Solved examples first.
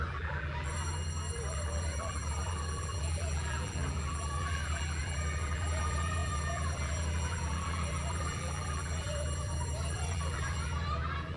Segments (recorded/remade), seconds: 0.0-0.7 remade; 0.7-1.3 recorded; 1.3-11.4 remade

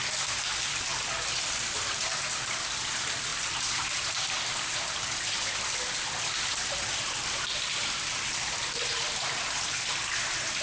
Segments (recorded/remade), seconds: 0.0-10.6 recorded

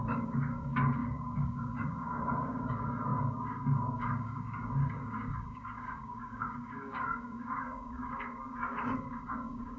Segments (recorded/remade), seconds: 0.0-9.8 remade

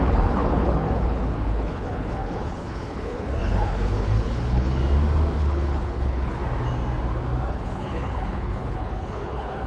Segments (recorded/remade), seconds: 0.0-4.8 remade; 4.8-5.4 recorded; 5.4-6.4 remade; 6.4-7.5 recorded; 7.5-9.7 remade